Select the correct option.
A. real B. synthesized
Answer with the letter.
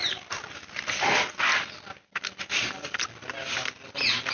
A